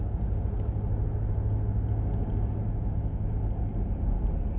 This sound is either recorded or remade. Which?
recorded